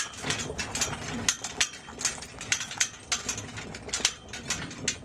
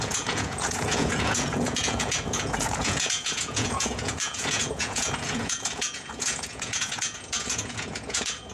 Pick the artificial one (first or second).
second